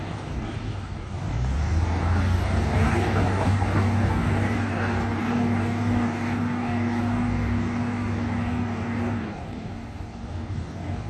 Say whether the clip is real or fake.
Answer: fake